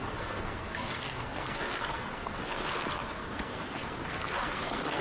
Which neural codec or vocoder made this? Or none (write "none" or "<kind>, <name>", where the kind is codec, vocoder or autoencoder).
codec, SNAC